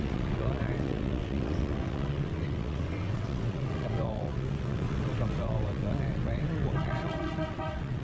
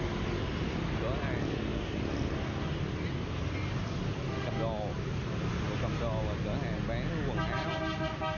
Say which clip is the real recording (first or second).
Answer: second